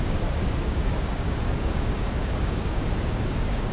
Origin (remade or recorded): remade